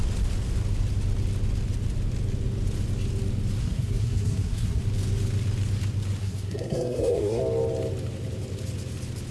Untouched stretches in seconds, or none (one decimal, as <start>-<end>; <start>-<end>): 0.0-3.6; 4.8-6.2; 7.4-9.3